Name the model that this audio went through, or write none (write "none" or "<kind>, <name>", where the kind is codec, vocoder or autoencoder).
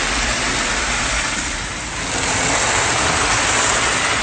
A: none